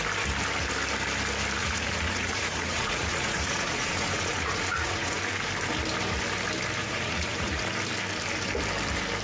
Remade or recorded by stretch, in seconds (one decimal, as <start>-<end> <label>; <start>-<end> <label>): 0.0-1.6 recorded; 1.6-5.2 remade; 5.2-6.8 recorded; 6.8-7.6 remade; 7.6-9.2 recorded